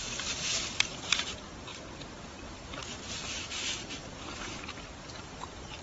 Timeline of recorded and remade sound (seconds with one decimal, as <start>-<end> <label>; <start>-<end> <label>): 0.0-1.7 remade; 1.7-2.3 recorded; 2.3-5.8 remade